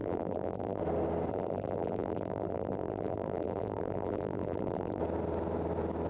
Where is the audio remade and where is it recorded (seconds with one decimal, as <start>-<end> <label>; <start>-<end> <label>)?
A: 0.0-0.8 remade; 0.8-1.3 recorded; 1.3-5.0 remade; 5.0-6.1 recorded